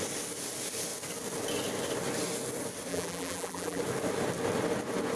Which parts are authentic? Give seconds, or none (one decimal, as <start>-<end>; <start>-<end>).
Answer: 0.0-2.9; 3.8-5.2